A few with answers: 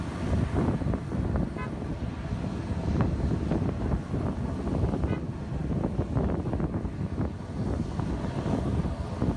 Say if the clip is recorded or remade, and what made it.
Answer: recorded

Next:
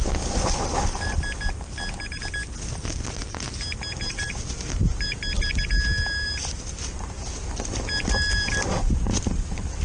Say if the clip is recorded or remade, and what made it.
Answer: remade, vocoder, BigVGAN v2